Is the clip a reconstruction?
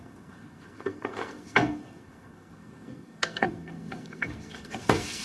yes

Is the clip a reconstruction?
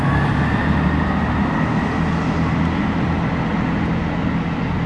no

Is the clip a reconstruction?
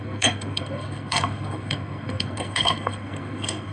yes